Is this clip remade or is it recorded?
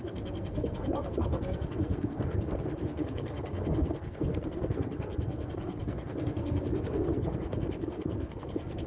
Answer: remade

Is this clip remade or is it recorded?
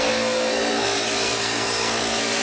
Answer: remade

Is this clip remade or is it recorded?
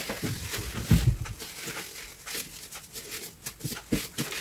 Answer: recorded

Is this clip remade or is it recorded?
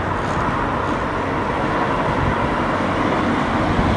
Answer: recorded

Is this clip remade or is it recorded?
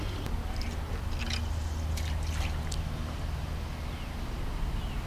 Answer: recorded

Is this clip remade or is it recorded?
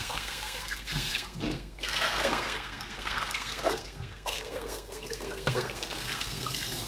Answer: remade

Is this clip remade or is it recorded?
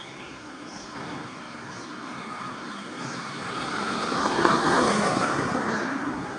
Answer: remade